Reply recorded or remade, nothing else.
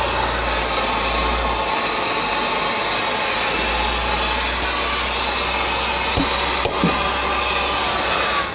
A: recorded